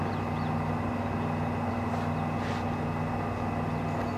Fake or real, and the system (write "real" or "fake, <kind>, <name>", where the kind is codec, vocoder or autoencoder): real